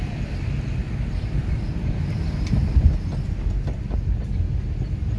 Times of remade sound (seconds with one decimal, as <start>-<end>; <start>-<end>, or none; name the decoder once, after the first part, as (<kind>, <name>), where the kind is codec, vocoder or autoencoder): 0.8-2.6 (vocoder, BigVGAN v2)